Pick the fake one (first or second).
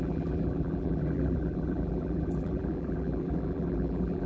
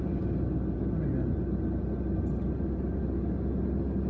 first